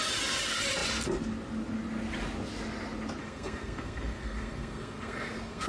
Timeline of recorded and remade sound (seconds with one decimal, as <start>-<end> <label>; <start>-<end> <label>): 0.0-3.2 recorded; 3.2-5.7 remade